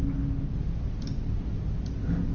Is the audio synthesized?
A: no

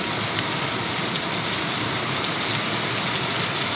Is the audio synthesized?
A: no